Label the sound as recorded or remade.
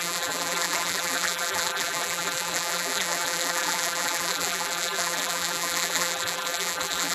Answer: remade